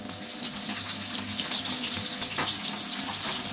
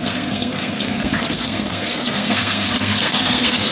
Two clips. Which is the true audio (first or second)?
first